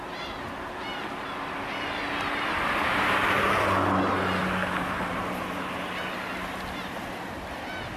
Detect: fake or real real